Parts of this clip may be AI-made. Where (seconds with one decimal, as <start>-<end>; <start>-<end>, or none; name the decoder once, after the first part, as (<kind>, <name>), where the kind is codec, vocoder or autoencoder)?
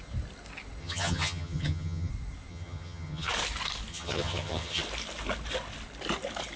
0.8-2.1 (vocoder, HiFi-GAN); 2.5-3.3; 3.9-4.8